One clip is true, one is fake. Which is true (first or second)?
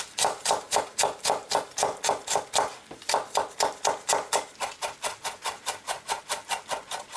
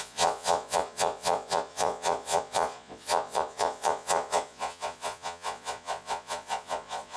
first